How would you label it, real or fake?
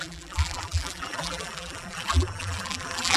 fake